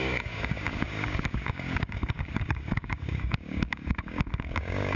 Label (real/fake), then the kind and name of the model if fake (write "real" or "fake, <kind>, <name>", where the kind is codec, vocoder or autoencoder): fake, codec, DAC